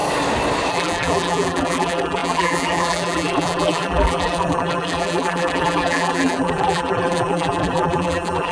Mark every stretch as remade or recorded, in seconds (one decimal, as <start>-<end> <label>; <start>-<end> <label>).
0.0-0.7 recorded; 0.7-8.5 remade